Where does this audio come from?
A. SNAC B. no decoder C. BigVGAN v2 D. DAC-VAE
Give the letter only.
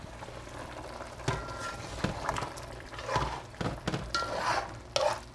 B